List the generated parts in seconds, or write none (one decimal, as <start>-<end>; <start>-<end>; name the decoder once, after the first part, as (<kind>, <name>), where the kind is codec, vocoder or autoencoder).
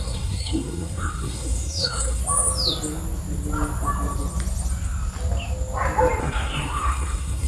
0.0-2.2 (codec, SNAC); 6.2-7.5